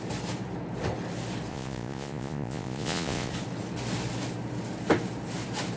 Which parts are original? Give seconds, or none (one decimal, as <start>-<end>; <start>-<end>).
0.0-1.5; 3.3-5.8